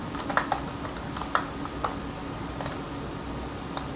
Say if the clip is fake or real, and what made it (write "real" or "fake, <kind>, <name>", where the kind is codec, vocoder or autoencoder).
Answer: real